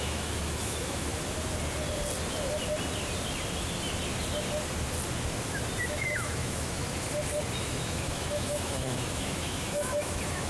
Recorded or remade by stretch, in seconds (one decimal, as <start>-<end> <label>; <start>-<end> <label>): 0.0-1.1 remade; 1.1-5.8 recorded; 5.8-6.8 remade; 6.8-7.6 recorded; 7.6-10.5 remade

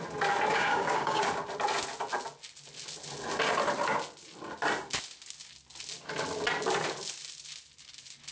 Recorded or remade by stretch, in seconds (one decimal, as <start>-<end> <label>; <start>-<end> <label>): 0.0-0.5 recorded; 0.5-1.2 remade; 1.2-8.3 recorded